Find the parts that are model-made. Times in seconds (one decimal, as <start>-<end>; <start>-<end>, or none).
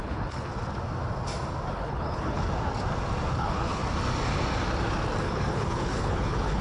0.0-0.5; 1.7-2.5; 3.3-3.8; 5.2-6.6